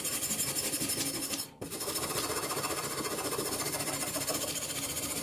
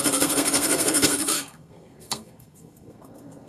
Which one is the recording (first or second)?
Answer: first